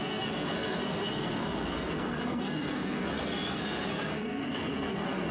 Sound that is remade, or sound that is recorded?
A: remade